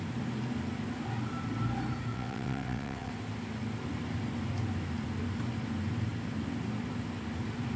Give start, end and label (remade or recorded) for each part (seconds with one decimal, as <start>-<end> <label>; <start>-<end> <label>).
0.0-2.1 recorded; 2.1-3.1 remade; 3.1-7.8 recorded